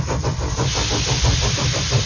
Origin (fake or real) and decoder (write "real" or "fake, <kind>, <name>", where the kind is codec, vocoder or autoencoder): real